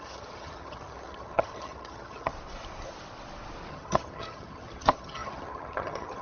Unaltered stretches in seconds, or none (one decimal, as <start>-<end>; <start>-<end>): 2.3-3.7